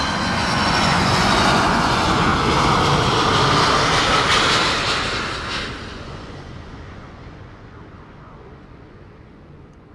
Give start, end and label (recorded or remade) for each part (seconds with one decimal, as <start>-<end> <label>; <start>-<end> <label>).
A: 0.0-2.3 remade; 2.3-5.9 recorded; 5.9-9.9 remade